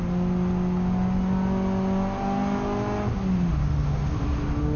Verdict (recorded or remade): recorded